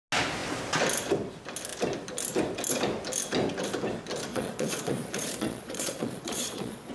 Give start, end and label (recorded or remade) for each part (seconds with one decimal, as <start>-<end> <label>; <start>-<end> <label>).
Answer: 0.0-4.3 recorded; 4.3-6.9 remade